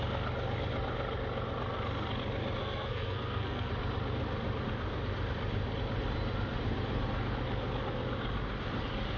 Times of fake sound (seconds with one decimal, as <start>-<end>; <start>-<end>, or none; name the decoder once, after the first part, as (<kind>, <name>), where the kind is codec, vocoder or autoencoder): 2.6-3.7 (codec, SNAC)